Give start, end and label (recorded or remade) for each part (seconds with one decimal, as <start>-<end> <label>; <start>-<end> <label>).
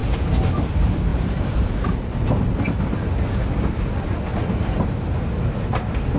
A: 0.0-1.1 recorded; 1.1-3.4 remade; 3.4-4.3 recorded; 4.3-5.3 remade; 5.3-6.2 recorded